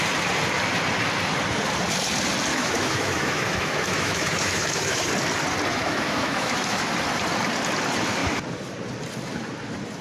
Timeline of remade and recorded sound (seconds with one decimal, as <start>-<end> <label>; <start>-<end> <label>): 0.0-2.5 recorded; 2.5-5.1 remade; 5.1-5.7 recorded; 5.7-6.9 remade; 6.9-10.0 recorded